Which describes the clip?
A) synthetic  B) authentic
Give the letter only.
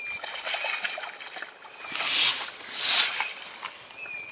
B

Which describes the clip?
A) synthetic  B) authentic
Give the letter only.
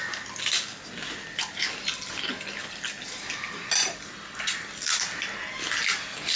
B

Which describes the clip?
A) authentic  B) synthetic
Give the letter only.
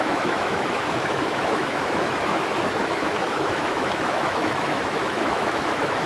B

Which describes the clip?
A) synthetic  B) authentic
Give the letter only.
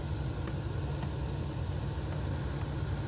B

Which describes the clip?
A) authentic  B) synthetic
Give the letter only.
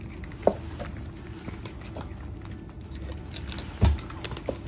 A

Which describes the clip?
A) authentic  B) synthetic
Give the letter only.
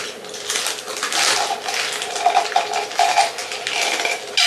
A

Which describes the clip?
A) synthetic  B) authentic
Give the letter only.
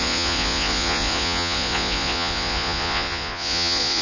A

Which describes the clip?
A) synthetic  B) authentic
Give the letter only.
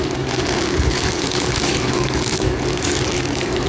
A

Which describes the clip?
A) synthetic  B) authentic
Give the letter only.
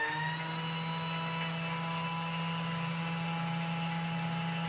B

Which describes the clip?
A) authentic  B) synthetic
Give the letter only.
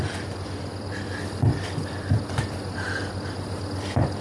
A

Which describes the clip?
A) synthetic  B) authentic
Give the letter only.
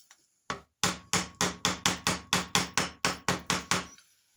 B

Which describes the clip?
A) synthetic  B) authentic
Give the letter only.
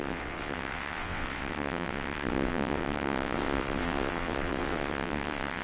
A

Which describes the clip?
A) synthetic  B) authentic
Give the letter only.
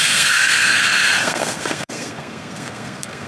A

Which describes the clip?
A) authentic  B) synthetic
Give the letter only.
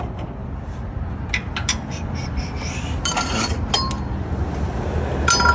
A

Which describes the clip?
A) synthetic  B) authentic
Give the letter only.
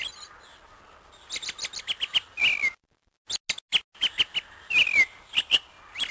B